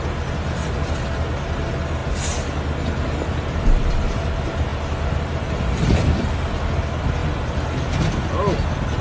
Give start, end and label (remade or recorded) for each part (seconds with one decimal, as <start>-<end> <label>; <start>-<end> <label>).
0.0-9.0 recorded